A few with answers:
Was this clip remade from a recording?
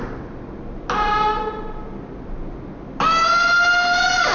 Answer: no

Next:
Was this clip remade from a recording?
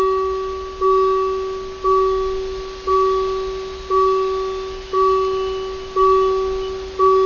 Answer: no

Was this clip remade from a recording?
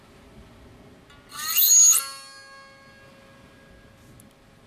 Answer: no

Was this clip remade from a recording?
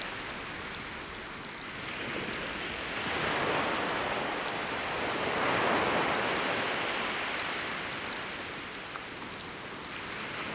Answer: no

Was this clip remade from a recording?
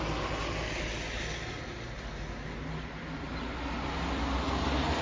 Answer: no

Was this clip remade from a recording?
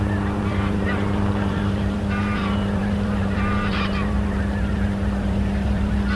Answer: yes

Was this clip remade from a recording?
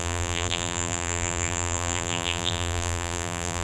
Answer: yes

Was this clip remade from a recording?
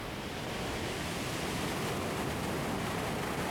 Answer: no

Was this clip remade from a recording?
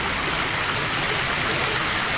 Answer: yes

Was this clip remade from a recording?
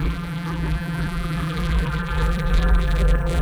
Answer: yes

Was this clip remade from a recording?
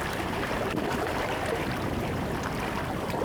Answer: yes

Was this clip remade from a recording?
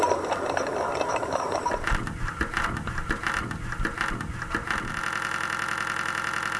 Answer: no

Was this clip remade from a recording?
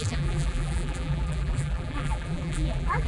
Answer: yes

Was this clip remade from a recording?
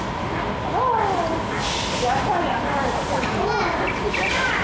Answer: no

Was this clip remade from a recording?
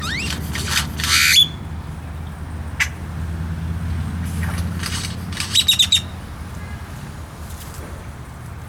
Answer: no